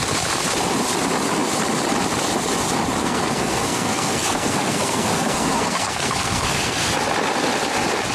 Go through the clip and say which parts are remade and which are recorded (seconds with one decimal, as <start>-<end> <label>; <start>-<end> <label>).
0.0-3.0 recorded; 3.0-6.9 remade; 6.9-8.1 recorded